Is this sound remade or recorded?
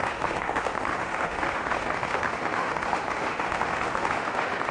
remade